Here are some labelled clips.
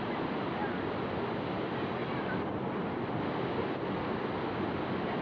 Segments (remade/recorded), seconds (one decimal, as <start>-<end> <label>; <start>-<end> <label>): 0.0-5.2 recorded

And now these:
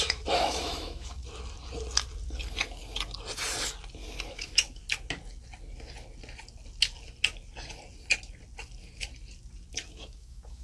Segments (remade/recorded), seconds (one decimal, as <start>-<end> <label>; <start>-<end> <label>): 0.0-1.2 remade; 1.2-4.3 recorded; 4.3-4.8 remade; 4.8-9.7 recorded; 9.7-10.6 remade

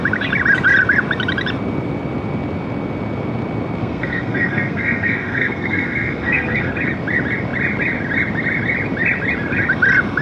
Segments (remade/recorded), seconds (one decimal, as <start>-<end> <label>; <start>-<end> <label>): 0.0-3.8 recorded; 3.8-6.7 remade; 6.7-10.2 recorded